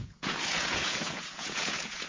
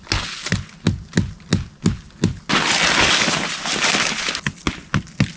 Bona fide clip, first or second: second